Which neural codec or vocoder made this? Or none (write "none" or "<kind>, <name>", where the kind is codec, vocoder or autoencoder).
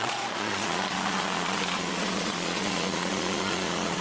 vocoder, Vocos